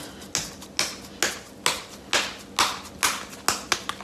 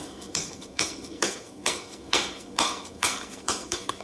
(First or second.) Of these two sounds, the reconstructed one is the second